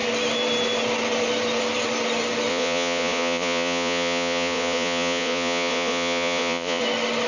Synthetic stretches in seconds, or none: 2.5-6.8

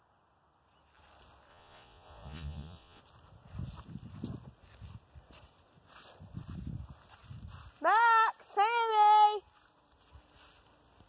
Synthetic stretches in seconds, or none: 1.5-3.0

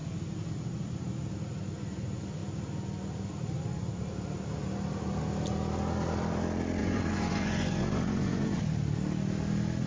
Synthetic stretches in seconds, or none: 6.8-8.6

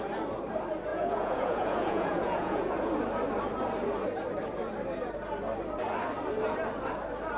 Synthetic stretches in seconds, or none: 0.9-2.9

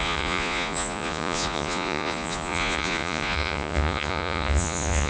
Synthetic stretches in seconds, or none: 0.0-5.1

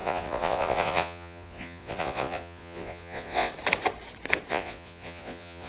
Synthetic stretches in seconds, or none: 0.0-3.5; 4.5-5.7